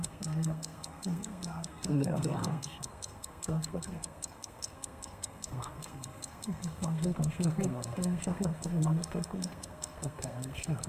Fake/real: fake